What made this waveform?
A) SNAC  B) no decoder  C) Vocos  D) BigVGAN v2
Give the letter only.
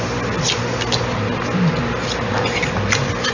B